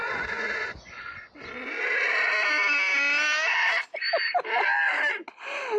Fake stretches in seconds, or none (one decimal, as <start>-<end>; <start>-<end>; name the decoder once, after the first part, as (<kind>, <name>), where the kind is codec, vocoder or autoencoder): 0.0-1.7 (vocoder, Vocos)